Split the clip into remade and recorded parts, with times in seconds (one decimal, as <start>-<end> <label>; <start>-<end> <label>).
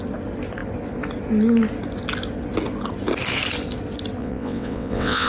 0.0-4.2 recorded; 4.2-5.3 remade